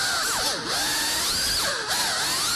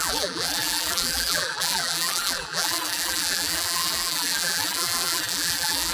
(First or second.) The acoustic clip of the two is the first